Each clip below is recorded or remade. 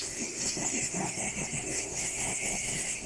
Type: remade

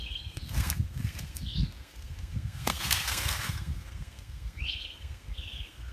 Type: remade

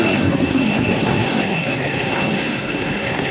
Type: remade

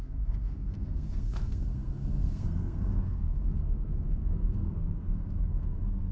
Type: remade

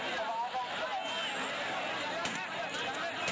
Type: recorded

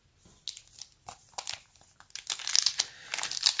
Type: recorded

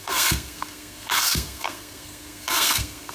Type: remade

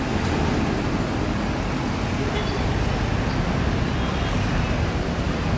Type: recorded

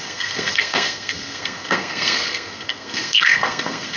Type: remade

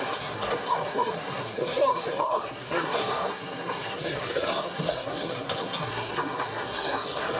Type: remade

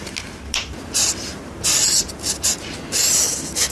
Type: recorded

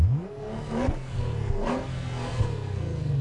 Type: remade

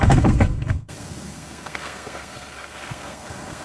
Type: remade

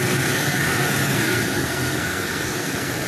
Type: remade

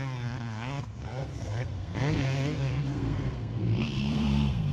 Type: remade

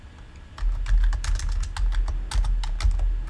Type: recorded